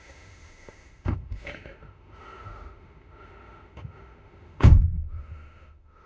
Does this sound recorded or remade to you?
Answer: remade